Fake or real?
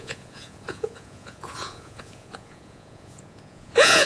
fake